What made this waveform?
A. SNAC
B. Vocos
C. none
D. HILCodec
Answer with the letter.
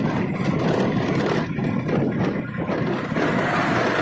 C